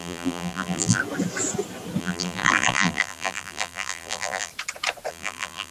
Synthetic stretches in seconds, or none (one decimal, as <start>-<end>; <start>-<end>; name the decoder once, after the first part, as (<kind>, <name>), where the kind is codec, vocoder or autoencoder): 0.0-1.0 (vocoder, BigVGAN v2); 2.0-4.5; 5.1-5.7